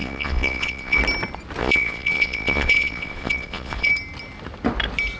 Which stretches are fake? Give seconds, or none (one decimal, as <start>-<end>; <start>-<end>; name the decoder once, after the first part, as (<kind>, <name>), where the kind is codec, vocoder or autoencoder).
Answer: 0.0-1.0 (vocoder, Vocos); 1.6-3.9